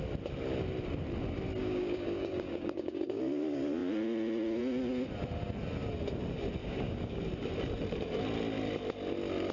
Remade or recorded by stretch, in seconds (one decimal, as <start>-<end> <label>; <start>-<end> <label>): 0.0-1.6 recorded; 1.6-3.2 remade; 3.2-6.6 recorded; 6.6-7.2 remade; 7.2-9.5 recorded